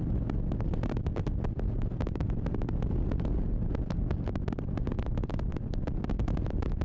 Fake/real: real